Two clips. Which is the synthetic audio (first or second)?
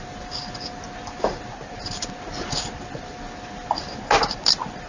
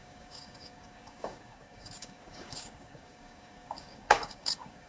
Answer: second